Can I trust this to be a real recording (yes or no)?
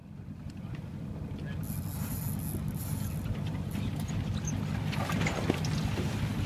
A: yes